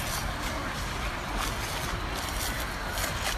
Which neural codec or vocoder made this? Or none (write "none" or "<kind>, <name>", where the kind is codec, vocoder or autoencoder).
none